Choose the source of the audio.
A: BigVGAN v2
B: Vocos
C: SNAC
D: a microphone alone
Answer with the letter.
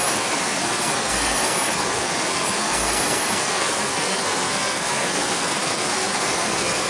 C